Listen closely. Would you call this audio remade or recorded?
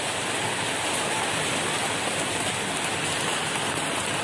recorded